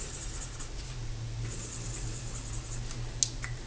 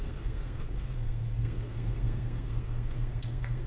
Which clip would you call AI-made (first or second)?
second